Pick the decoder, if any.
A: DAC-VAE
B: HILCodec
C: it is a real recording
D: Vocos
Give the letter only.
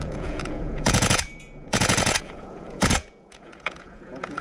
D